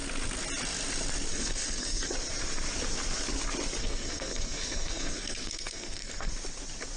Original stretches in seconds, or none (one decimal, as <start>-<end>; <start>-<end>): 0.0-1.3; 2.1-3.8; 6.3-7.0